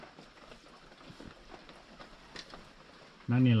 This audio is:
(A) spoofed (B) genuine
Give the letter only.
A